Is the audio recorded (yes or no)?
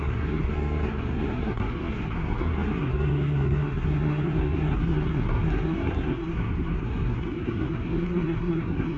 no